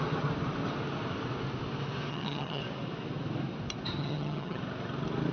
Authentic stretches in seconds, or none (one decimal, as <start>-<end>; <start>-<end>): 0.0-2.1; 2.6-4.0; 4.6-5.3

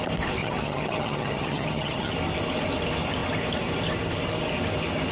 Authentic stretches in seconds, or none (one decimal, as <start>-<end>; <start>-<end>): 0.0-0.4; 2.1-5.1

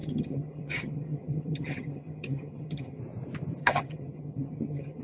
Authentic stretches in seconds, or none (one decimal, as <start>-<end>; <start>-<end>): 3.0-3.6

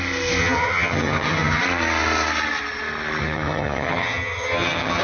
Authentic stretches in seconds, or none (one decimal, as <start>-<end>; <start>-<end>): 0.0-0.4; 1.6-3.2

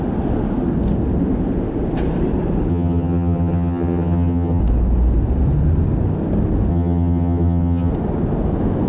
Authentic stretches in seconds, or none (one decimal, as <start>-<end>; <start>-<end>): 0.0-2.7; 4.6-6.7; 7.9-8.9

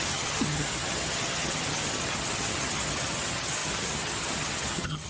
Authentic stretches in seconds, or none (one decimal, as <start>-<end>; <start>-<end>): none

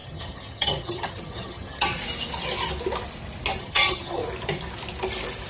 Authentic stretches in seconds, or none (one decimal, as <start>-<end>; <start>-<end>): 1.9-3.6; 4.2-5.5